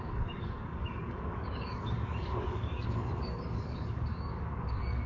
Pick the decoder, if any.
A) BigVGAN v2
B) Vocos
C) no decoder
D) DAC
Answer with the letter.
D